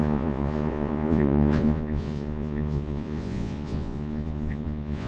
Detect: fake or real fake